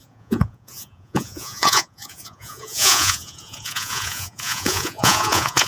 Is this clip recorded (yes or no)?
no